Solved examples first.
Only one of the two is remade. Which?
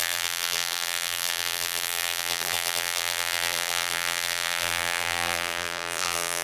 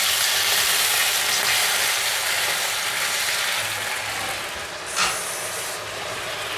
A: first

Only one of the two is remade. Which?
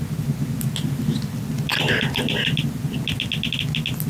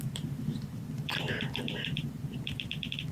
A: second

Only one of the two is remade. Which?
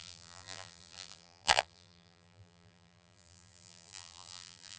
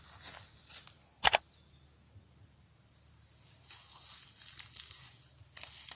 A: first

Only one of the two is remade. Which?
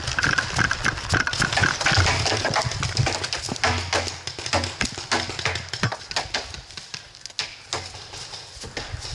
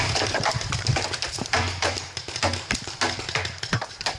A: second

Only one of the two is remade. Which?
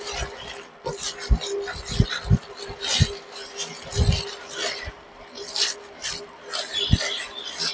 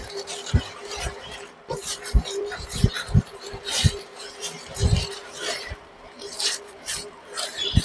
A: second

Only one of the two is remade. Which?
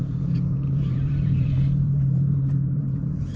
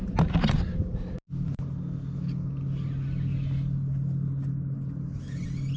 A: first